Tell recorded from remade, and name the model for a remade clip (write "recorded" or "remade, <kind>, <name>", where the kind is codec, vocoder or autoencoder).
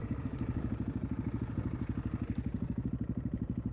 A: recorded